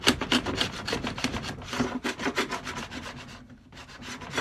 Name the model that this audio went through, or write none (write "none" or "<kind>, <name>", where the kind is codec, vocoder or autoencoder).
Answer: none